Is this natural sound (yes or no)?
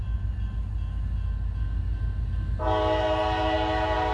yes